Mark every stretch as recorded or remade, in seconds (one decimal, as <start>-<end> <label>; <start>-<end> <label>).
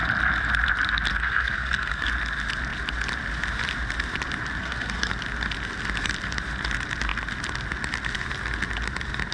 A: 0.0-1.1 recorded; 1.1-2.1 remade; 2.1-4.6 recorded; 4.6-5.1 remade; 5.1-9.3 recorded